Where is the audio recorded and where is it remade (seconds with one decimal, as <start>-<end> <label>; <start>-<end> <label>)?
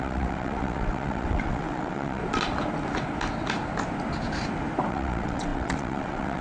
0.0-2.2 remade; 2.2-4.9 recorded; 4.9-6.4 remade